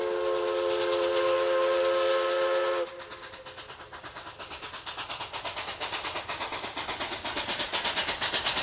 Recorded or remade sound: recorded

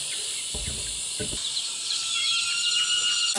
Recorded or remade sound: recorded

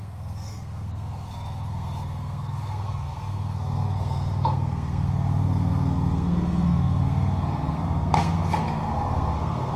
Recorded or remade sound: remade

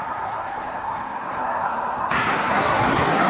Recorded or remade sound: remade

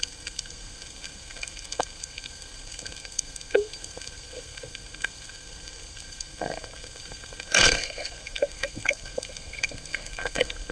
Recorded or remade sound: remade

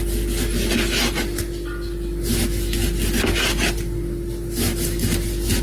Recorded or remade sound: recorded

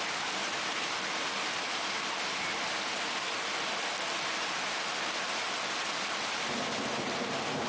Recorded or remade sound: recorded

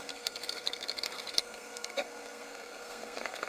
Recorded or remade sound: remade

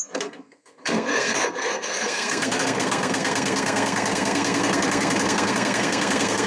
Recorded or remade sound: remade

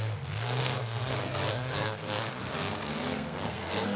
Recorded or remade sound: remade